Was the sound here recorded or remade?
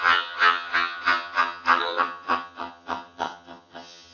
remade